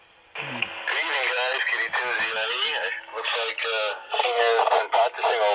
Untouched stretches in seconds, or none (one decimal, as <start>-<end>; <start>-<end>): 0.0-3.9; 4.4-5.5